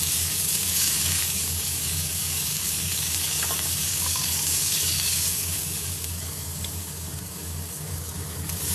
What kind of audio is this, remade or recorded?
remade